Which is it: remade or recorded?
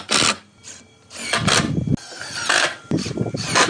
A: recorded